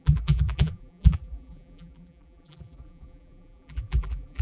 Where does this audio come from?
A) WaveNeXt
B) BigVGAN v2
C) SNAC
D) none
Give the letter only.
B